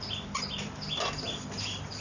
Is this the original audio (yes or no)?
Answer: yes